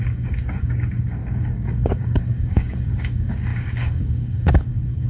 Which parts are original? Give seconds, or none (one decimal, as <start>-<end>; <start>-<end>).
none